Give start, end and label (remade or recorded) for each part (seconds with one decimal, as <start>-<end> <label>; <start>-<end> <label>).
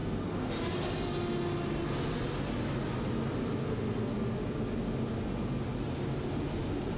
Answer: 0.0-0.5 remade; 0.5-3.6 recorded; 3.6-4.1 remade; 4.1-7.0 recorded